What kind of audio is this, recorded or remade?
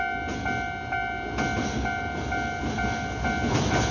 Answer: recorded